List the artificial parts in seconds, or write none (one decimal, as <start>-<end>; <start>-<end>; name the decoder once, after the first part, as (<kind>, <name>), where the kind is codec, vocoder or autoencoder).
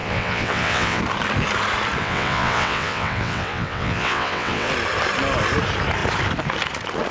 0.0-1.0 (vocoder, WaveNeXt); 2.0-4.7